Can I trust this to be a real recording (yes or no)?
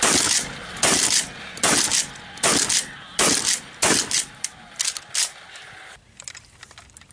yes